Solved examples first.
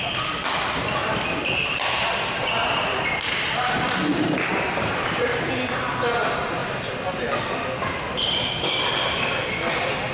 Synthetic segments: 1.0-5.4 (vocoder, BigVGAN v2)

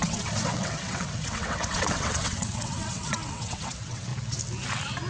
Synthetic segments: 0.0-4.1 (vocoder, WaveNeXt)

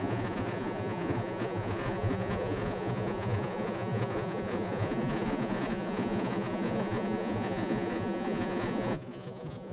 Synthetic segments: 0.0-9.7 (vocoder, Vocos)

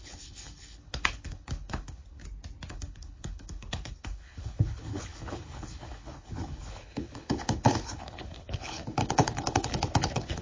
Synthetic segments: 0.0-2.2 (codec, HILCodec); 2.7-10.4